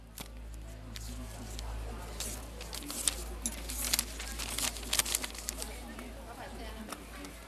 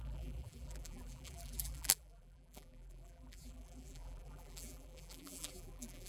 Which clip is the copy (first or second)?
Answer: second